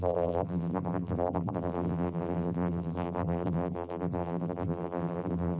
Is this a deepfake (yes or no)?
yes